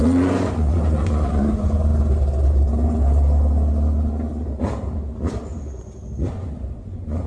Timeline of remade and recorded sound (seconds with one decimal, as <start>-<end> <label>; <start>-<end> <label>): 0.0-1.9 remade; 1.9-6.3 recorded; 6.3-7.3 remade